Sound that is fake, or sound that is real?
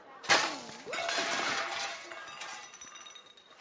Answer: real